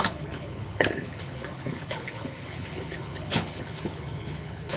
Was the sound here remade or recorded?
remade